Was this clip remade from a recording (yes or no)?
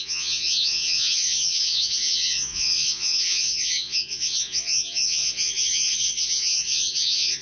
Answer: yes